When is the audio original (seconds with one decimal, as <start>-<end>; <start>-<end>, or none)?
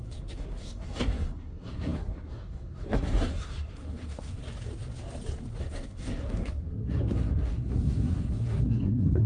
4.4-5.6